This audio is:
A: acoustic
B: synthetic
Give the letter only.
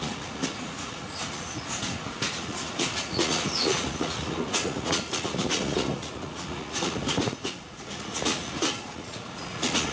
B